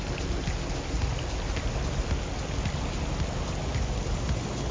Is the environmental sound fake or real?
real